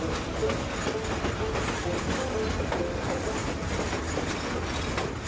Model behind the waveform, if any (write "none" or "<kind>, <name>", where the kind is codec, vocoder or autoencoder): none